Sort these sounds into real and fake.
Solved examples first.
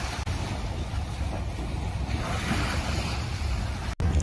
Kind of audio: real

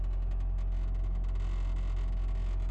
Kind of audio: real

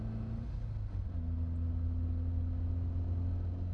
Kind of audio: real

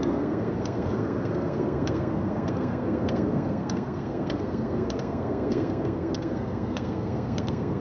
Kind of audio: fake